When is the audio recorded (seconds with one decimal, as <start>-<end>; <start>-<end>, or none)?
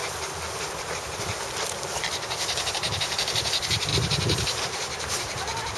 0.0-2.7